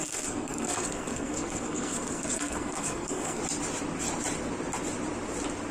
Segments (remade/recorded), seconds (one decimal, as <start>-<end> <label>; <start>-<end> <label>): 0.0-3.4 remade; 3.4-5.7 recorded